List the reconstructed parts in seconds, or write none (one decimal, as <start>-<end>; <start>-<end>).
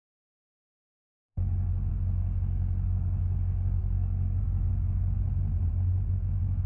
0.0-5.2; 6.1-6.7